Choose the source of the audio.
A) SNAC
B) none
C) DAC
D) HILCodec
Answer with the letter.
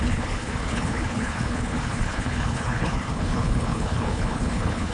D